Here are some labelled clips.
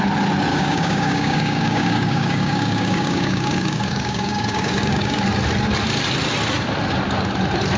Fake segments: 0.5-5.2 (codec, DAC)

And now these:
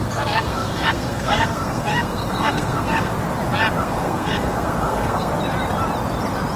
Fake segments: 0.0-3.1 (codec, SNAC); 3.8-5.3

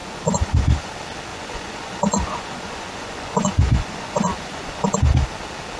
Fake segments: 0.0-0.9 (vocoder, Vocos); 1.3-4.8

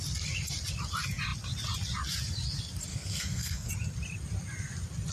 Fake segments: 2.9-3.7 (codec, SNAC)

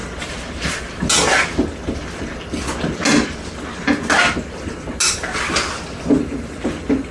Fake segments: none

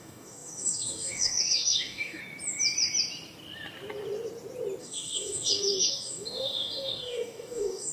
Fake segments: 0.0-2.2 (codec, DAC); 4.8-7.9